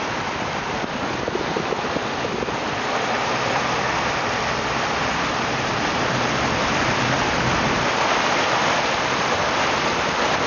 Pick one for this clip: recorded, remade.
remade